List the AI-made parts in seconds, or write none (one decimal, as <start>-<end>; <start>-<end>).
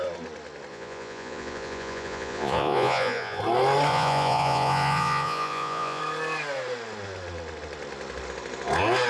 0.7-3.4; 3.9-6.0